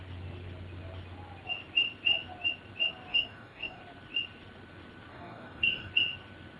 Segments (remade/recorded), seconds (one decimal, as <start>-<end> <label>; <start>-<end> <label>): 0.0-3.1 recorded; 3.1-3.8 remade; 3.8-5.1 recorded; 5.1-5.9 remade; 5.9-6.6 recorded